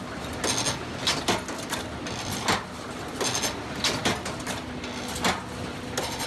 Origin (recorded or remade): recorded